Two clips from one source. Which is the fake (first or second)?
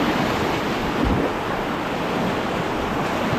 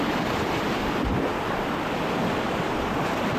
second